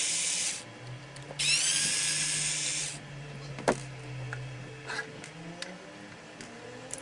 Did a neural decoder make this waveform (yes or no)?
no